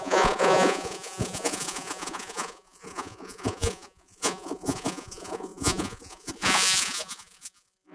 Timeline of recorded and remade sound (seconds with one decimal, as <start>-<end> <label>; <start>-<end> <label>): 0.0-7.9 remade